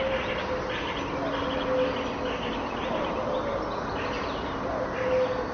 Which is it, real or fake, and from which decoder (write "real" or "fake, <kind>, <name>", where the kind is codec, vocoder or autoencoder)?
real